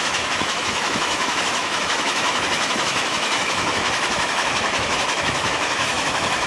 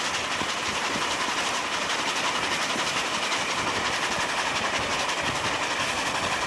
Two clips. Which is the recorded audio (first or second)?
second